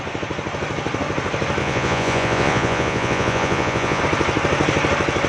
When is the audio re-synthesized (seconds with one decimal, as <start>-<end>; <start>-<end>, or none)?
1.6-4.0